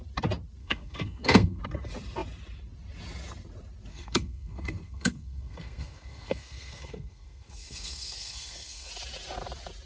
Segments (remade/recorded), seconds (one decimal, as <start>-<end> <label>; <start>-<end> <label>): 0.0-0.6 recorded; 0.6-1.6 remade; 1.6-3.9 recorded; 3.9-8.9 remade; 8.9-9.9 recorded